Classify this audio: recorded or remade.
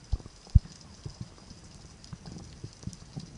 recorded